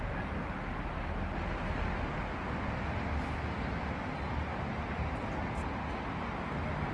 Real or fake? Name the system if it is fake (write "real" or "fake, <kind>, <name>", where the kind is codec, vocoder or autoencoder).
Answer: real